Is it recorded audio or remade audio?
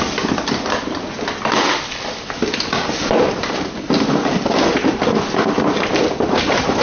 recorded